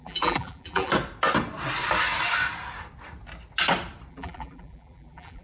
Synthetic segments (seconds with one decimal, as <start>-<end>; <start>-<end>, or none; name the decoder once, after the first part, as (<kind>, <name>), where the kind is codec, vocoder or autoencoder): 0.0-0.9 (vocoder, BigVGAN v2); 4.1-5.4